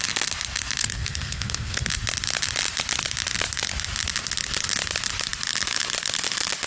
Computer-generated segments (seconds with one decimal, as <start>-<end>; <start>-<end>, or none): 0.8-1.9